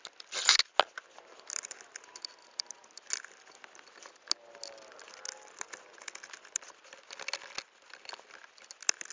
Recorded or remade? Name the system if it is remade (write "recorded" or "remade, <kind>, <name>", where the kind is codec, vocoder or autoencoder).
recorded